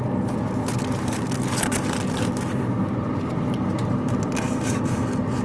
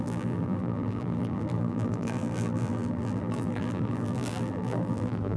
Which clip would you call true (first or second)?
first